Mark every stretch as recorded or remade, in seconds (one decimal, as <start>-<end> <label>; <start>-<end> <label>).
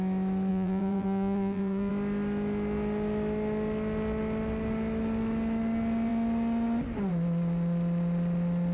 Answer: 0.0-0.5 recorded; 0.5-1.9 remade; 1.9-8.7 recorded